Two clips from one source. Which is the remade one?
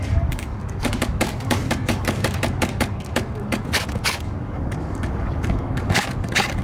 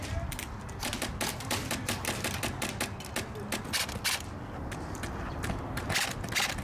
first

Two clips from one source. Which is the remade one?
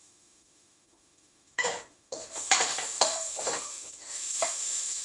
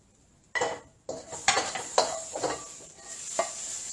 first